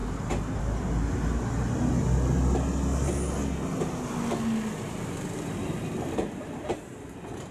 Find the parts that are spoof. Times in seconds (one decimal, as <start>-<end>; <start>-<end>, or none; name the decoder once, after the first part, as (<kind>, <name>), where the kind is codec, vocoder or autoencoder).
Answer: none